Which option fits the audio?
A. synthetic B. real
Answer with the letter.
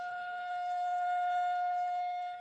A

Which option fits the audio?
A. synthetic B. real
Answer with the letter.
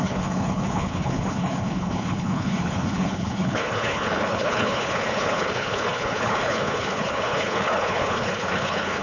A